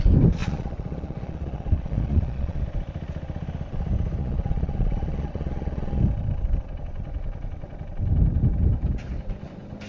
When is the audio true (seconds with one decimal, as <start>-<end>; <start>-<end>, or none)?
0.0-0.4; 2.6-4.2; 6.0-9.9